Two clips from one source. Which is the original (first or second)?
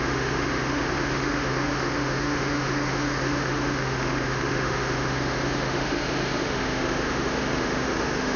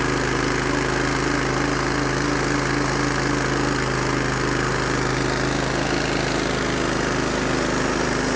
second